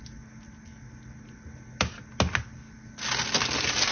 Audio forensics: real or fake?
real